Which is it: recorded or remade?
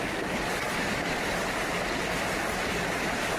recorded